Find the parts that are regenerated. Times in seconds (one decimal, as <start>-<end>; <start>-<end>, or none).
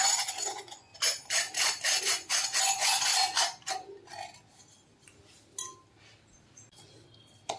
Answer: 0.0-0.9; 2.0-3.1